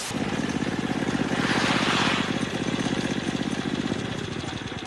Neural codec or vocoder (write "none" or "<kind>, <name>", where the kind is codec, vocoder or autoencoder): none